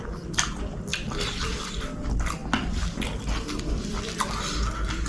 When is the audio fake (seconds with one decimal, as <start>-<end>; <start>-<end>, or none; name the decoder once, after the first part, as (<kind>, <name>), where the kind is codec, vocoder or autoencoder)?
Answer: 0.9-1.6 (vocoder, BigVGAN v2)